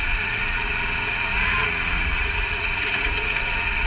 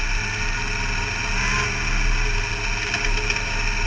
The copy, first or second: first